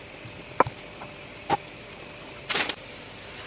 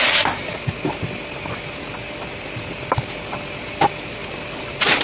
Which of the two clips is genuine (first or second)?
second